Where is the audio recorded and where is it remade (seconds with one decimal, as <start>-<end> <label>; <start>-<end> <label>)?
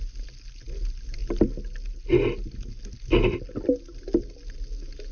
0.0-5.1 recorded